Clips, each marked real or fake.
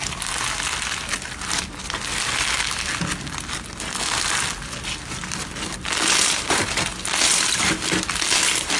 real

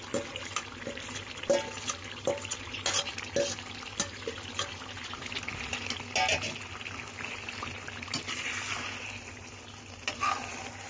real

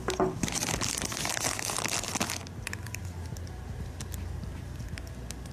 real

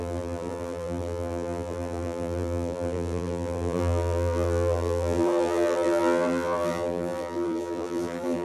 fake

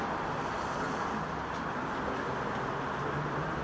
real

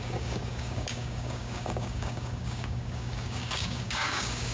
fake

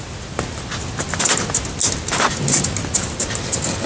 real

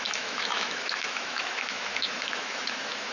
fake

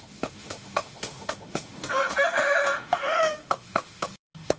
fake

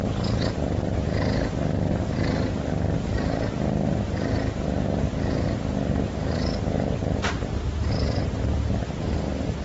real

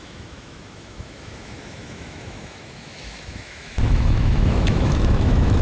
fake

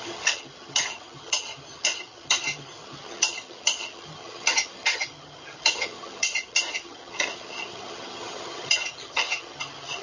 fake